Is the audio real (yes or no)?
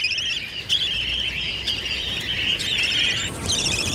no